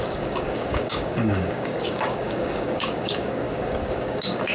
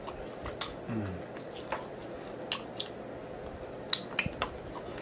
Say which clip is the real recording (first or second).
second